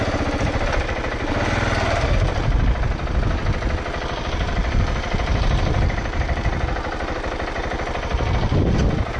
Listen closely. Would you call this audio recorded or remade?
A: recorded